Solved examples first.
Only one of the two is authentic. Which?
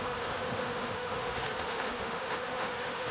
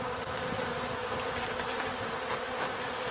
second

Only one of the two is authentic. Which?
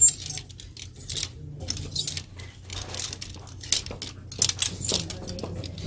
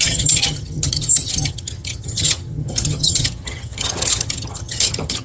first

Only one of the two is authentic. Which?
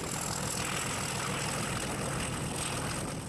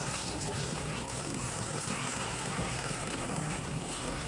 first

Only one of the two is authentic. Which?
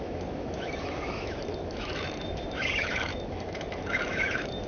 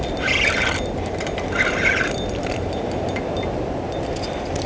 second